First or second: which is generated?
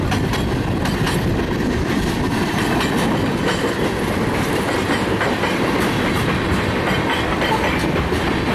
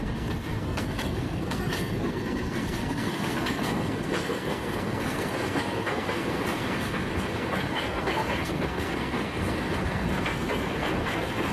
second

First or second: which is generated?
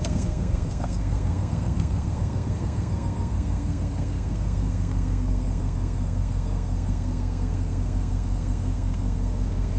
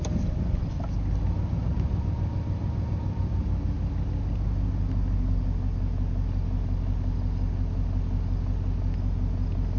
first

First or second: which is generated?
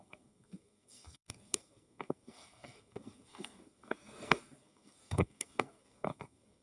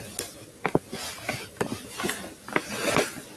first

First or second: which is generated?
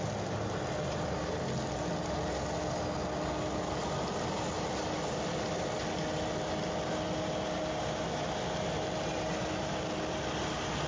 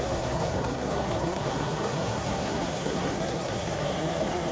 second